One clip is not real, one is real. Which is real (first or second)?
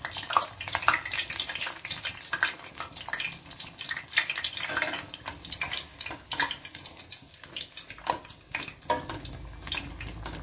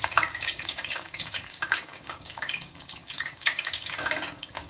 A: first